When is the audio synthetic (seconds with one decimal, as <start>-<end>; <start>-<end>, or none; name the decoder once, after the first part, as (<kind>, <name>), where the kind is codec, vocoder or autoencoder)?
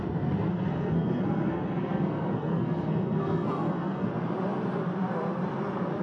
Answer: 0.5-4.1 (codec, SNAC)